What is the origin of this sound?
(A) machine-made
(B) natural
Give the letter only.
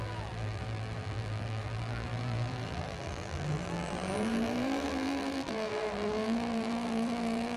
A